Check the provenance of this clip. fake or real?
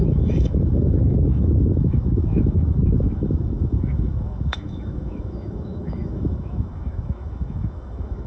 fake